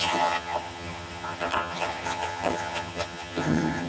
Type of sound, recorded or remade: remade